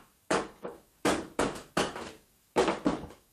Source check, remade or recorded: remade